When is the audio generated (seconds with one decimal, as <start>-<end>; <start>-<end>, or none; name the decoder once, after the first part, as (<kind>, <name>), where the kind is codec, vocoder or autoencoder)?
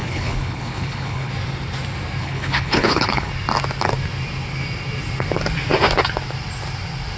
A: 0.0-1.3 (codec, HILCodec); 2.2-3.3